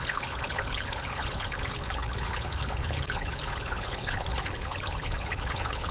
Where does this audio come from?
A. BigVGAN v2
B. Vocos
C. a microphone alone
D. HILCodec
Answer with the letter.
D